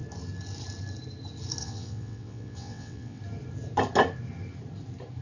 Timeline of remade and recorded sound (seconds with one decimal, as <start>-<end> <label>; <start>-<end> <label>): 0.0-1.6 recorded; 1.6-3.2 remade; 3.2-5.2 recorded